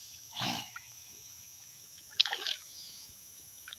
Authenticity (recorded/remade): remade